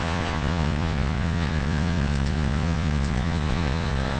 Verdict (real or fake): fake